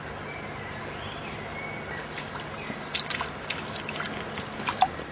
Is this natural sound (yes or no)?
yes